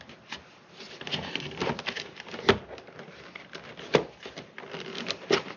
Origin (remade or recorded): recorded